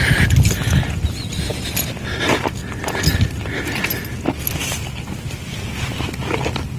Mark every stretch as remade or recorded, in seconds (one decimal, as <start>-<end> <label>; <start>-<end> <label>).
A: 0.0-6.8 recorded